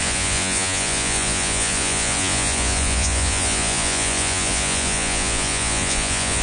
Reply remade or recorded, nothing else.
remade